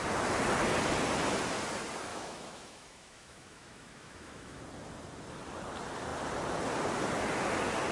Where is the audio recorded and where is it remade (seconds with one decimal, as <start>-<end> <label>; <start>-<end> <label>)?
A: 0.0-2.1 recorded; 2.1-4.6 remade; 4.6-7.9 recorded